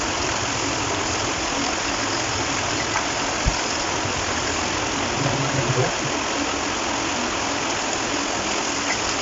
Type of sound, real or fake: real